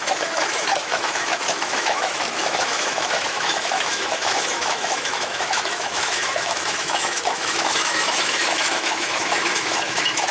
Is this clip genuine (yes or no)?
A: no